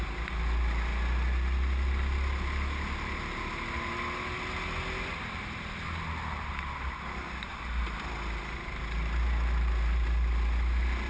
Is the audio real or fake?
real